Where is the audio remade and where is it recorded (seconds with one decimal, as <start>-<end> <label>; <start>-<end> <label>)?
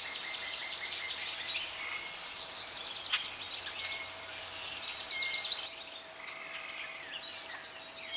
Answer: 0.0-8.2 remade